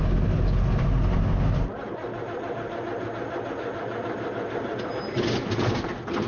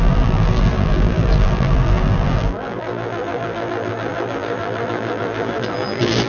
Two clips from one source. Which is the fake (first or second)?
second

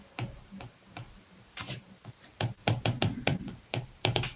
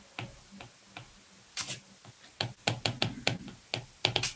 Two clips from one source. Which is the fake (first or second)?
first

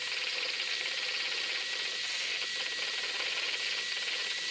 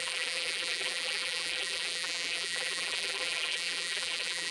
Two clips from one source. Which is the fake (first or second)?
second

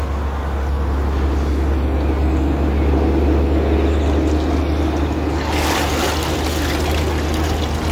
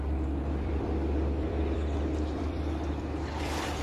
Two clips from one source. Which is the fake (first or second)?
second